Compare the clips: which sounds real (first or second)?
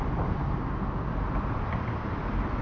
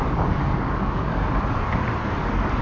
first